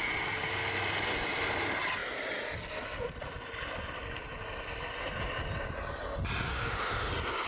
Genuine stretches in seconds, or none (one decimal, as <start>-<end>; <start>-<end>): 0.0-6.5; 7.1-7.5